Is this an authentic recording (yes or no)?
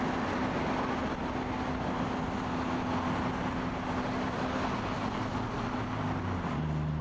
yes